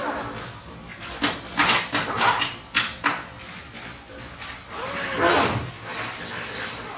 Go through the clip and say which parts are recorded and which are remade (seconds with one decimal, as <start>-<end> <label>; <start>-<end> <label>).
0.0-7.0 recorded